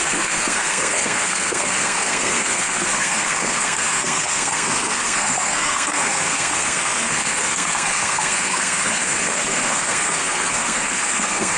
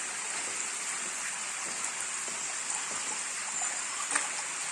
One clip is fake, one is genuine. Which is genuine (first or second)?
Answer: second